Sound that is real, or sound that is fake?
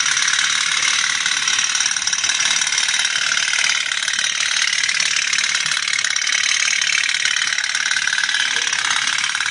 real